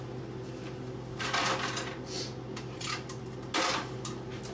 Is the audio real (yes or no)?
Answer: yes